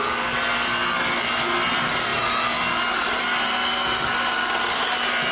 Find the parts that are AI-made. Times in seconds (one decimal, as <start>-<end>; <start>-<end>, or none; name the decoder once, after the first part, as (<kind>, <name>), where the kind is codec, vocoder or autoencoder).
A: none